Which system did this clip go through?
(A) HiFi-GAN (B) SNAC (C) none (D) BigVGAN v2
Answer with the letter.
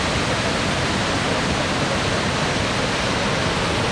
C